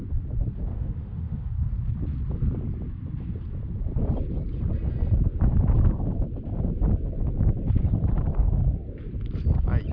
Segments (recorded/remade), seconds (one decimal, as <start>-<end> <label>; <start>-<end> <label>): 0.0-0.7 recorded; 0.7-1.5 remade; 1.5-9.9 recorded